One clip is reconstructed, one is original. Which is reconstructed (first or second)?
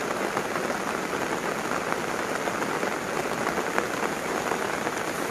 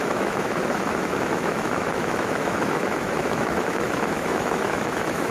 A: second